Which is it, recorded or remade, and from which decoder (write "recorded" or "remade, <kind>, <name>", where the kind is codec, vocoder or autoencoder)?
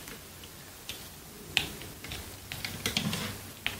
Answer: recorded